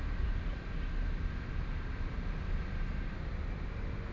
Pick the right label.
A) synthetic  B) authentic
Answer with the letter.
B